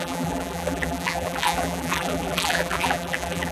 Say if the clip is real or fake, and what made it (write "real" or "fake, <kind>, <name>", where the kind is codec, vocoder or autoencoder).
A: fake, vocoder, BigVGAN v2